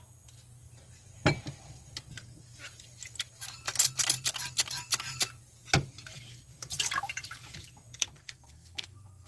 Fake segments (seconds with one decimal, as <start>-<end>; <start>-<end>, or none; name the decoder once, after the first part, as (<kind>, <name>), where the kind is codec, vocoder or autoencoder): 8.2-9.3 (codec, SNAC)